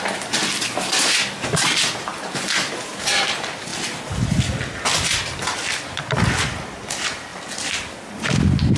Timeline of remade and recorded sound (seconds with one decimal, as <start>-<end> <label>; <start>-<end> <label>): 0.0-3.7 remade; 3.7-4.2 recorded; 4.2-8.8 remade